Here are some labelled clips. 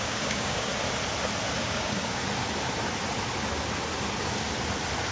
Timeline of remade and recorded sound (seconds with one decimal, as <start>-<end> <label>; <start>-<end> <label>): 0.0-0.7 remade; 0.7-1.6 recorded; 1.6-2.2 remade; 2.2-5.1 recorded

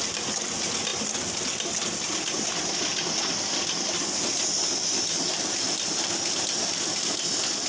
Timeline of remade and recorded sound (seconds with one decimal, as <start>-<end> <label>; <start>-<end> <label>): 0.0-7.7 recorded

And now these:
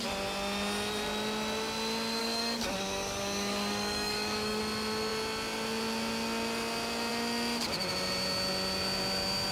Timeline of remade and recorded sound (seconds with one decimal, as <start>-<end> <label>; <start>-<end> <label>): 0.0-2.2 recorded; 2.2-4.6 remade; 4.6-9.5 recorded

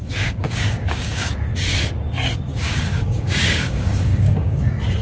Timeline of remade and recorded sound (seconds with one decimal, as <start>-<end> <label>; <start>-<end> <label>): 0.0-1.3 remade; 1.3-2.5 recorded; 2.5-4.6 remade; 4.6-5.0 recorded

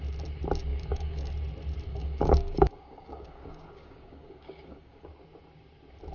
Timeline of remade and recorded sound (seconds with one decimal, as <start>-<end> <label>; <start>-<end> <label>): 0.0-0.7 recorded; 0.7-1.3 remade; 1.3-1.9 recorded; 1.9-5.1 remade; 5.1-6.1 recorded

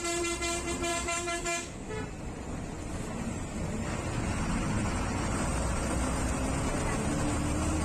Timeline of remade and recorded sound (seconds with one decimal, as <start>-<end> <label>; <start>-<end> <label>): 0.0-0.9 recorded; 0.9-1.9 remade; 1.9-7.8 recorded

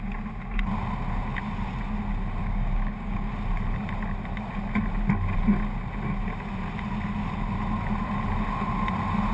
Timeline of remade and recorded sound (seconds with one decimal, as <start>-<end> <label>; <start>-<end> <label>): 0.0-2.4 recorded; 2.4-3.3 remade; 3.3-9.3 recorded

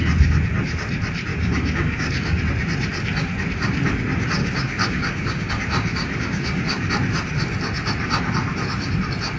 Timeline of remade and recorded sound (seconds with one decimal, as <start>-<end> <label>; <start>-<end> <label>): 0.0-1.3 recorded; 1.3-2.4 remade; 2.4-4.4 recorded; 4.4-5.5 remade; 5.5-5.9 recorded; 5.9-6.9 remade; 6.9-9.4 recorded